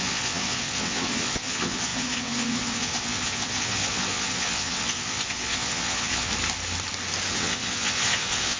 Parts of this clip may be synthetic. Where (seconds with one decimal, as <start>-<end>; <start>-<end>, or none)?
0.0-6.3; 7.3-8.6